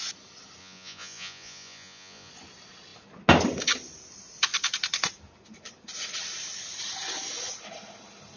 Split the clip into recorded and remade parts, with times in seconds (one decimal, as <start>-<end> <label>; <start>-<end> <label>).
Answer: 0.0-0.6 recorded; 0.6-2.3 remade; 2.3-8.4 recorded